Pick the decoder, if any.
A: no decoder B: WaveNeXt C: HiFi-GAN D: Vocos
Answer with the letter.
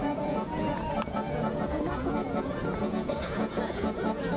D